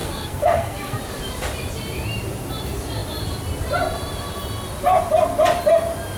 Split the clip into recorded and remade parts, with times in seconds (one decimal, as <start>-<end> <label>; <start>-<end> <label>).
0.0-1.0 remade; 1.0-6.2 recorded